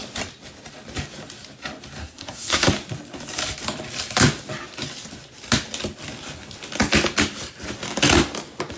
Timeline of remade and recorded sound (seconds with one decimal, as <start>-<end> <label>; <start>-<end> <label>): 0.0-2.0 recorded; 2.0-2.7 remade; 2.7-8.8 recorded